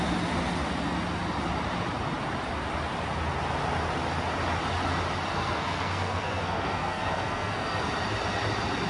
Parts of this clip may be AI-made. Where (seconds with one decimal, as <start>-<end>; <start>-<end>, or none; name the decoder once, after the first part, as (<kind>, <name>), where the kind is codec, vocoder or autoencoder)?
5.3-7.9 (codec, SNAC)